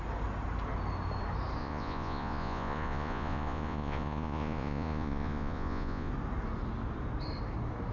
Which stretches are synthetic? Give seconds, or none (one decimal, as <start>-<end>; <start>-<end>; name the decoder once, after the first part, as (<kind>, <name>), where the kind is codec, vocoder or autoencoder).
1.6-6.1 (vocoder, Vocos)